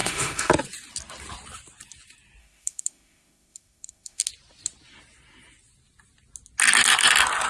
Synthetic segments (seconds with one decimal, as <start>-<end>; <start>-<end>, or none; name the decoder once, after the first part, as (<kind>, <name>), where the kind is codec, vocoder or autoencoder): 0.0-0.5 (autoencoder, DAC-VAE); 2.4-4.3

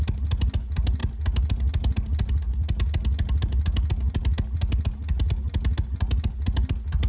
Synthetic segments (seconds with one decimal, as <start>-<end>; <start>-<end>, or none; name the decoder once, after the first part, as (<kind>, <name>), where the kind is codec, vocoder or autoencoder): none

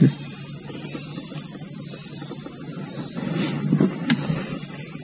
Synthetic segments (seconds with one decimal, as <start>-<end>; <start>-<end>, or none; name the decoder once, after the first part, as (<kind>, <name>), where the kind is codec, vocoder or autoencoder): none